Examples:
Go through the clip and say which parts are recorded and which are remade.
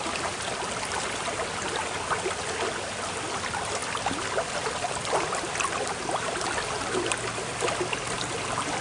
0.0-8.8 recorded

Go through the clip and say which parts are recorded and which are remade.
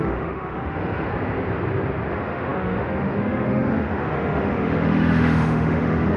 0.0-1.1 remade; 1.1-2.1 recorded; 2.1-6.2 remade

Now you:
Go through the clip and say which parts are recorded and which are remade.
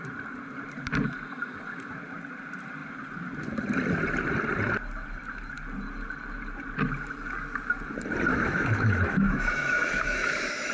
0.0-8.3 recorded; 8.3-10.7 remade